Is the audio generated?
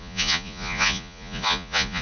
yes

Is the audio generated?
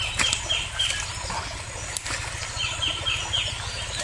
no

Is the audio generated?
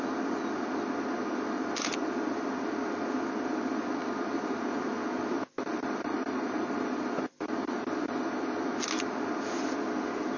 no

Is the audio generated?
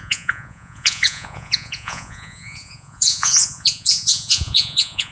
yes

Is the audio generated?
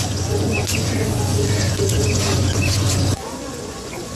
yes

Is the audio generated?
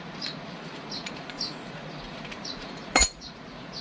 yes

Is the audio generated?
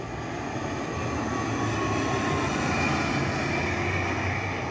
no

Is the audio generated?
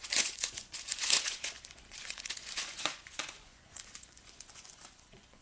yes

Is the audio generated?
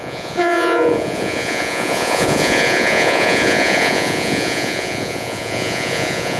yes